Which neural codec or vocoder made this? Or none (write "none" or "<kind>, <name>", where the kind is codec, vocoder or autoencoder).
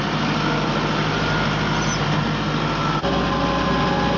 none